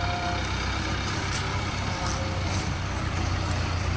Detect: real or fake real